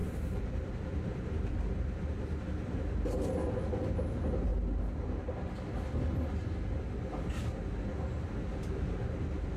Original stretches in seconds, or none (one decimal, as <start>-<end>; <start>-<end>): 2.4-9.6